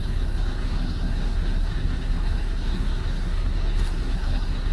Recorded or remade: remade